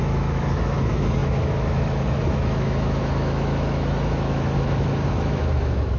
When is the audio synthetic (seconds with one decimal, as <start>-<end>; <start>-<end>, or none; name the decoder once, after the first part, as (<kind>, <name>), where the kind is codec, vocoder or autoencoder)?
0.0-6.0 (autoencoder, DAC-VAE)